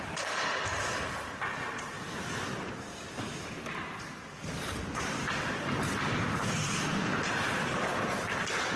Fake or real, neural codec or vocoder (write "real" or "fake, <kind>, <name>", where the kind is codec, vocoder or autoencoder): fake, vocoder, BigVGAN v2